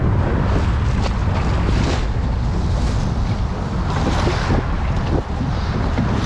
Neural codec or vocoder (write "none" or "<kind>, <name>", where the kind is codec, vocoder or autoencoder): none